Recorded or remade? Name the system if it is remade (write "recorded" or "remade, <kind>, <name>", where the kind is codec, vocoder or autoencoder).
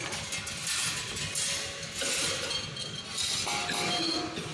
recorded